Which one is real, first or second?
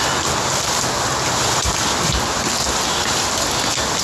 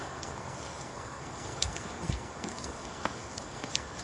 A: first